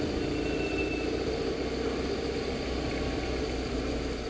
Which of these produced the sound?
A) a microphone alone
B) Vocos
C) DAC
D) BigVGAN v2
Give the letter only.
A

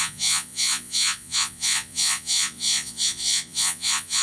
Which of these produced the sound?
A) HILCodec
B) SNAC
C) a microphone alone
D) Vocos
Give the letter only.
D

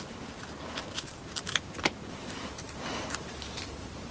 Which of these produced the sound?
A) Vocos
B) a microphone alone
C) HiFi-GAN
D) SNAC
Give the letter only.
B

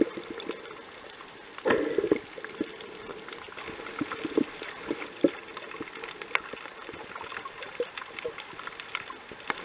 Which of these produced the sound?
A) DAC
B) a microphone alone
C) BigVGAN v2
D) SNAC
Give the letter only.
B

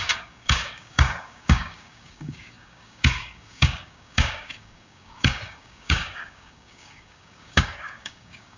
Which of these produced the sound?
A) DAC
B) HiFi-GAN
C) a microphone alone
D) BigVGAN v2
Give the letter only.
A